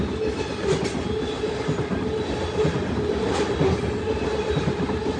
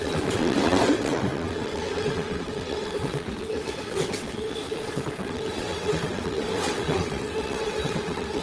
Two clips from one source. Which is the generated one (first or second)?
second